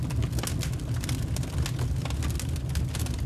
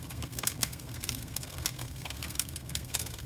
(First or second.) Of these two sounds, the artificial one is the second